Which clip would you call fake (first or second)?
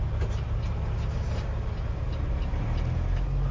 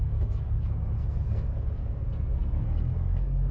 second